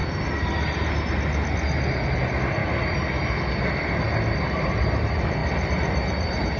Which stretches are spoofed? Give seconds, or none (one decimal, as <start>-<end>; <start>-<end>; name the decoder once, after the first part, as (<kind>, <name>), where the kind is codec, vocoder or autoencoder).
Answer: 1.9-2.6 (vocoder, BigVGAN v2); 4.5-6.6